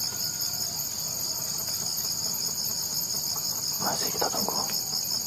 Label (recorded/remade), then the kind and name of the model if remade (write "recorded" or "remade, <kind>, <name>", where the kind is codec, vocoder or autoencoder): recorded